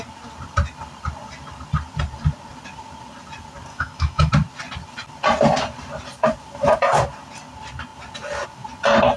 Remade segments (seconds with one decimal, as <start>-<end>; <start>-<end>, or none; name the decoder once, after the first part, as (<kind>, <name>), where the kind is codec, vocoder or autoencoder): 3.7-4.3 (autoencoder, DAC-VAE)